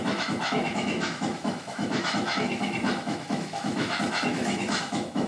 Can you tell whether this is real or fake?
fake